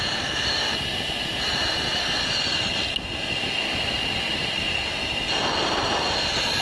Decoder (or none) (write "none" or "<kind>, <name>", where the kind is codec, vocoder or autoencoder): none